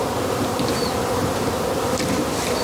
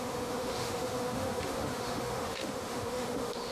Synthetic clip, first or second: second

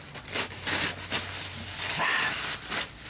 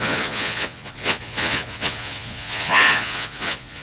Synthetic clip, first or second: second